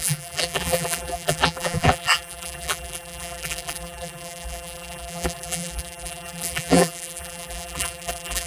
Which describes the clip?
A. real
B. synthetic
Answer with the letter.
B